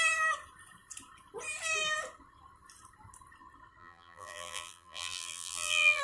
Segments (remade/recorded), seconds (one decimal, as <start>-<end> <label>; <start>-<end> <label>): 0.0-3.8 recorded; 3.8-6.0 remade